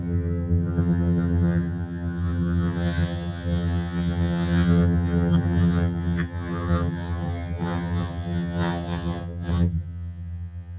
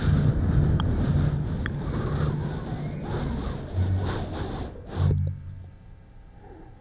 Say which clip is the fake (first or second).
first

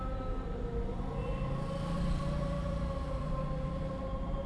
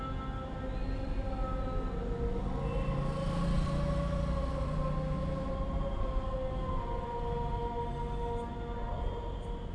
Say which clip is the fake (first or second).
first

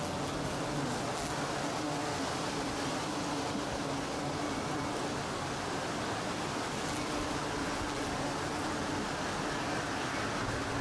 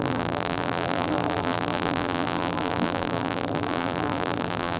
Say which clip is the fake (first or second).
second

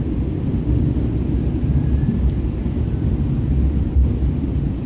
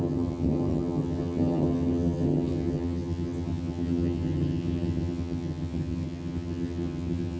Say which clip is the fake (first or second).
second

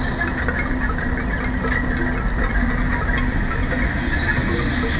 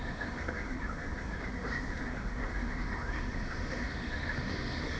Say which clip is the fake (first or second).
second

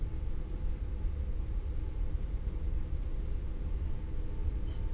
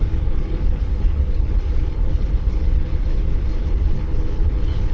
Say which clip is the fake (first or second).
second